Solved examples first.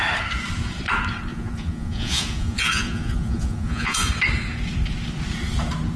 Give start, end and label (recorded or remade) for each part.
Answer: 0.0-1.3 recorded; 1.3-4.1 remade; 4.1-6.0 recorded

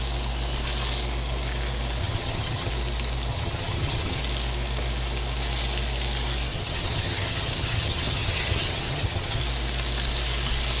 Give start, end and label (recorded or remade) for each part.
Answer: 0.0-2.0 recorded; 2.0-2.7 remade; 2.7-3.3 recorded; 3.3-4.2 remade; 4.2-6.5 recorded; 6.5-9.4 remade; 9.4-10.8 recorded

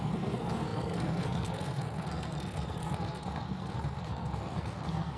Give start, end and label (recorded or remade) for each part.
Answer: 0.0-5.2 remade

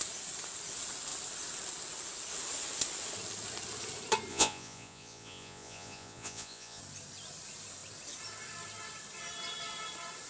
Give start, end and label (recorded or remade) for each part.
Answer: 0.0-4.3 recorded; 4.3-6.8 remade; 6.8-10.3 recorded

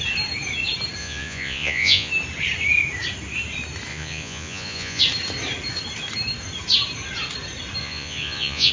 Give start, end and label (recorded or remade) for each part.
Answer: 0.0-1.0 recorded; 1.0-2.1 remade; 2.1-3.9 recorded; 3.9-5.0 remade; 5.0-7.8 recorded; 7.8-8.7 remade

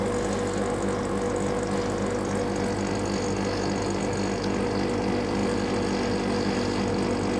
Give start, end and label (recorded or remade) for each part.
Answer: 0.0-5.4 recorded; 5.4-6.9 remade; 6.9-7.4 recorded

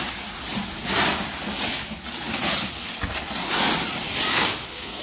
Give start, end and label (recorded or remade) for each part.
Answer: 0.0-4.3 recorded; 4.3-5.0 remade

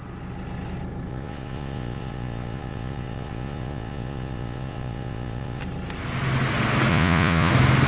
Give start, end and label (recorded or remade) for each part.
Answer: 0.0-1.1 recorded; 1.1-5.6 remade; 5.6-6.9 recorded; 6.9-7.5 remade; 7.5-7.9 recorded